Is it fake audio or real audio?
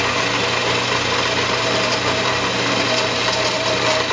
real